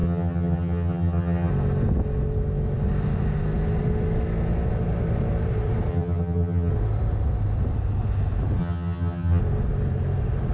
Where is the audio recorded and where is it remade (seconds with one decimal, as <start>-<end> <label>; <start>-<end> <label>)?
0.0-1.5 remade; 1.5-5.9 recorded; 5.9-6.7 remade; 6.7-8.6 recorded; 8.6-9.4 remade; 9.4-10.5 recorded

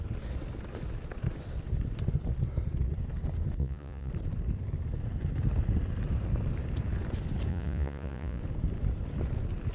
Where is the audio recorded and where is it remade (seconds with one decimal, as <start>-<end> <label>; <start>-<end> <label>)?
0.0-3.6 recorded; 3.6-4.1 remade; 4.1-7.5 recorded; 7.5-8.4 remade; 8.4-9.7 recorded